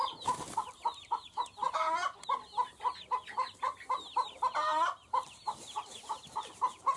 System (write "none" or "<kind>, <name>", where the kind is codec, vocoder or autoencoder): none